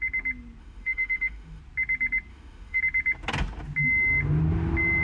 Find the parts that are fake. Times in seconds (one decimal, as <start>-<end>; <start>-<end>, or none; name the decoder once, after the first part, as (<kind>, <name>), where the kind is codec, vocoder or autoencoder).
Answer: 0.6-1.6 (autoencoder, DAC-VAE); 2.3-2.8